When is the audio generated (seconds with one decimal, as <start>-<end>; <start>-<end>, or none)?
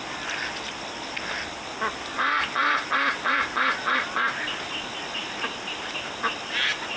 2.6-4.0